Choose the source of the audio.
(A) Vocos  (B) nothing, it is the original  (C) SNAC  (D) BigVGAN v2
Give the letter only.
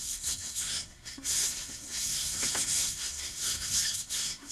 C